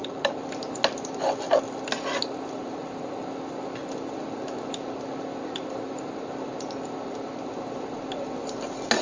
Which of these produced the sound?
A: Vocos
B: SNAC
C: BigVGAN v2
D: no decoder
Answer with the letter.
D